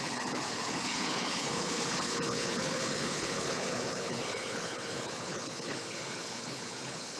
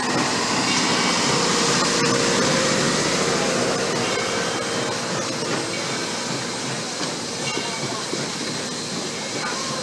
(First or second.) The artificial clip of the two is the first